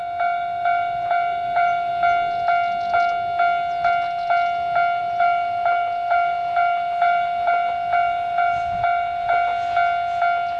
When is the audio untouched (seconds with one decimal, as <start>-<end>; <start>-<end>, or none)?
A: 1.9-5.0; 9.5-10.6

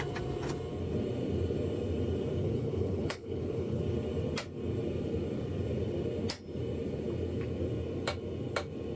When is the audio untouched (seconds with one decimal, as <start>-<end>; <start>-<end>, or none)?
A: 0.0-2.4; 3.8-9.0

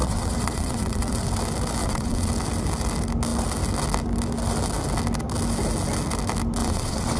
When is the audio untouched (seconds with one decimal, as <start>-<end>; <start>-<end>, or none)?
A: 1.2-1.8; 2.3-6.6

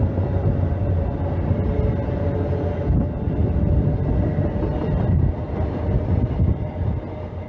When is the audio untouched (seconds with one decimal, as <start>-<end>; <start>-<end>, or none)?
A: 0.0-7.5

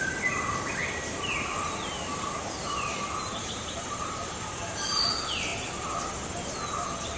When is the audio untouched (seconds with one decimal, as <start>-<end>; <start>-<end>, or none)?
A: 0.0-0.8; 4.7-7.2

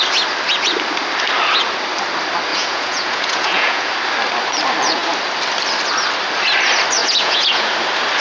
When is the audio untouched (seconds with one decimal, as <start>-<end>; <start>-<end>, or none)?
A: 0.0-2.5; 3.9-7.0; 7.7-8.2